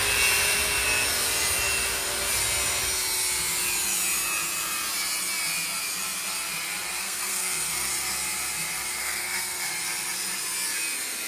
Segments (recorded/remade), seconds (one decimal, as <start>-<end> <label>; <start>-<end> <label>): 0.0-7.0 recorded; 7.0-7.9 remade; 7.9-9.0 recorded; 9.0-9.7 remade; 9.7-11.3 recorded